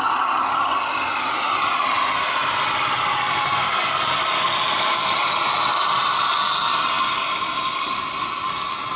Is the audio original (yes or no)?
yes